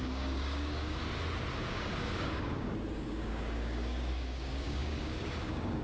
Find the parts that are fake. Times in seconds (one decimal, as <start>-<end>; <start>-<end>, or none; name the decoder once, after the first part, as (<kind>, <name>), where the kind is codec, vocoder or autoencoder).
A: 0.0-1.0 (codec, DAC); 1.5-5.8